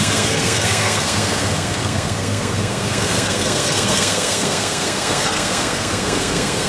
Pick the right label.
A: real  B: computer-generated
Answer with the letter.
B